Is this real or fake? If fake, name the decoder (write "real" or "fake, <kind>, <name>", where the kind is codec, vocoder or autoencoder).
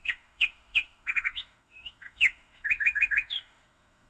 fake, autoencoder, DAC-VAE